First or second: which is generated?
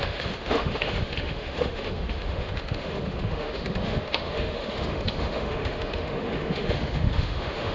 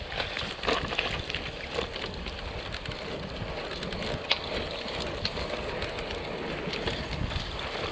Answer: first